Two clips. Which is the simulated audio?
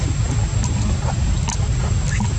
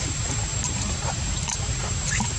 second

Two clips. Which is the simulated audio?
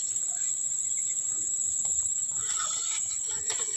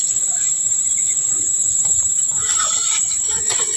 second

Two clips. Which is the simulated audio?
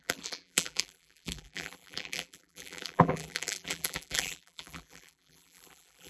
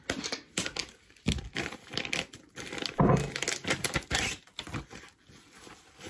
first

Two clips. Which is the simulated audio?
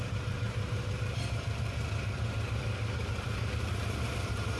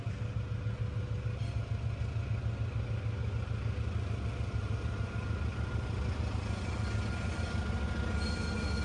first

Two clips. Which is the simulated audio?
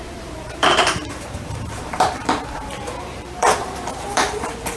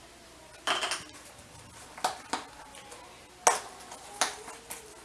first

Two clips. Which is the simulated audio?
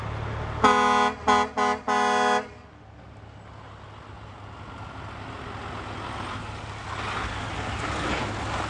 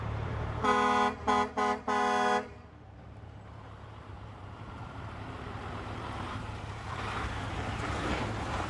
second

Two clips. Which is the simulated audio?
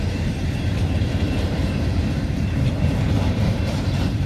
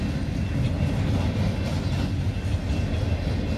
first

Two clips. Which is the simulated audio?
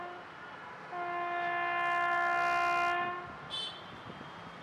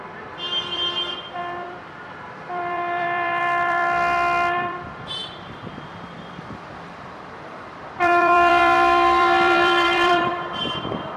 second